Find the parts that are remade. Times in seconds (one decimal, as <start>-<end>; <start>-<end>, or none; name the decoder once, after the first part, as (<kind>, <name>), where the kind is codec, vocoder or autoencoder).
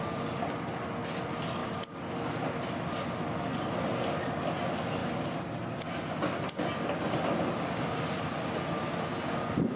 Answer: none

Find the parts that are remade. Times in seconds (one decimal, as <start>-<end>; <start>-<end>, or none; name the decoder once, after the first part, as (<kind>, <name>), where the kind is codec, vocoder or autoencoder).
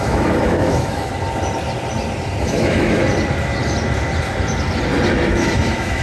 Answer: 0.0-1.1 (autoencoder, DAC-VAE); 2.4-3.0; 5.3-6.0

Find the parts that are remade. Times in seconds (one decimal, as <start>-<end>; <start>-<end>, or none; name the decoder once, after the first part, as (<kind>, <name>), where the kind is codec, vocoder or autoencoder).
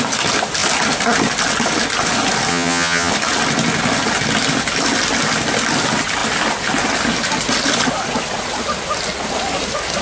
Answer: 2.5-3.1 (vocoder, HiFi-GAN)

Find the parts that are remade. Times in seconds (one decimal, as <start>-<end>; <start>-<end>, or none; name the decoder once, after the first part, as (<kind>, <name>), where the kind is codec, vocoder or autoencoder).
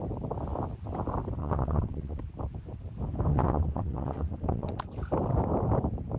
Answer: 1.4-2.2 (vocoder, WaveNeXt); 3.3-4.8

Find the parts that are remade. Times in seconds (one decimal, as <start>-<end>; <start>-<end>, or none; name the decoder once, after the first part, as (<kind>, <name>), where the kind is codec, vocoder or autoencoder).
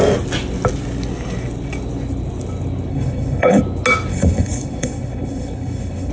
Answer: 2.9-3.6 (codec, HILCodec); 4.1-6.1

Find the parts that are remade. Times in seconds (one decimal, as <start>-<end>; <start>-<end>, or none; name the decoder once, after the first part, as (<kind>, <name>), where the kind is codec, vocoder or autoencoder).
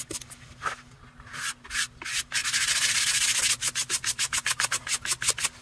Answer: 2.4-3.0 (vocoder, BigVGAN v2); 3.8-4.9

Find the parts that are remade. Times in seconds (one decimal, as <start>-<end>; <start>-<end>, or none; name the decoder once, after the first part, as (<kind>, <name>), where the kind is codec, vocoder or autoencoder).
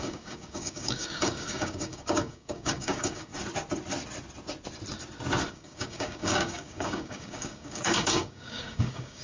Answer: 0.0-3.3 (codec, DAC); 5.5-9.2